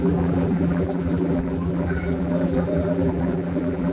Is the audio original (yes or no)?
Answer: no